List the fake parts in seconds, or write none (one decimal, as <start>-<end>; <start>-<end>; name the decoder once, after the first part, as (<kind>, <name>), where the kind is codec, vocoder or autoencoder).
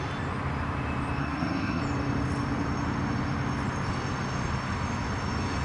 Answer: 1.2-1.8 (codec, SNAC)